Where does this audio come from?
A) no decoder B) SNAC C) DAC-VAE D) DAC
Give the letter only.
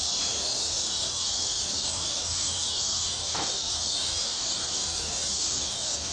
D